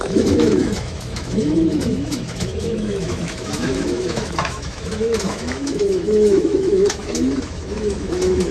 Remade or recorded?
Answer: remade